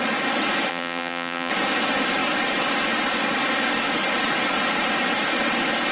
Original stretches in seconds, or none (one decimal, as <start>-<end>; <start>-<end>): 0.0-0.7; 1.5-5.9